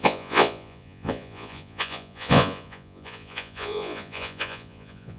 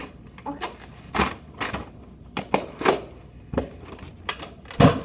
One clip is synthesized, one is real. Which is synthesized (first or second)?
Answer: first